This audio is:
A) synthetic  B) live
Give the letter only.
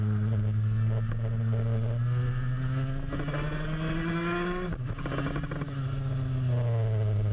B